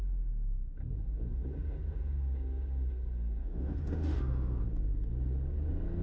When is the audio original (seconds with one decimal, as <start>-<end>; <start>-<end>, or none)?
0.0-3.4; 4.6-6.0